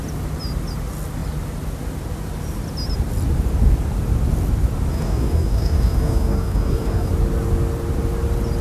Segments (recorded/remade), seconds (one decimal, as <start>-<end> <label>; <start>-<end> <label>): 0.0-4.9 recorded; 4.9-7.1 remade; 7.1-8.6 recorded